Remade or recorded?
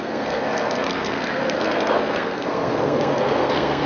remade